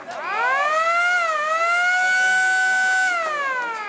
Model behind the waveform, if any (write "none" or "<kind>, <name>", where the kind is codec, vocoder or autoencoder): none